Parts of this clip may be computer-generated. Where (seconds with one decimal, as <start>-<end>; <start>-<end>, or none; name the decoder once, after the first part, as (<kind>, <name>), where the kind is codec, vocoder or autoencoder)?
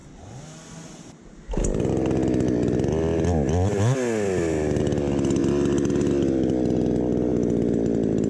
none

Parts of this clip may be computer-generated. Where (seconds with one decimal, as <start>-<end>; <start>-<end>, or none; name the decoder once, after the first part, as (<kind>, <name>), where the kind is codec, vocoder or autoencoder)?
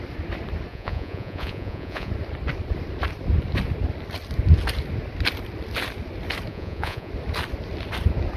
0.7-2.1 (vocoder, Vocos); 6.5-7.1